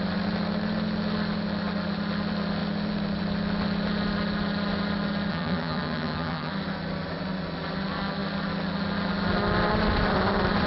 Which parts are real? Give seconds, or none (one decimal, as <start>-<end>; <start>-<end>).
0.0-5.3; 6.5-10.7